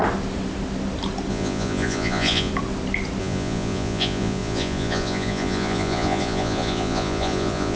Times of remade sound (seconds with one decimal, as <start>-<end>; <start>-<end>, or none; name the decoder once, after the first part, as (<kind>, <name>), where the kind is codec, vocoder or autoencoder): 1.3-2.5 (vocoder, Vocos); 3.2-7.8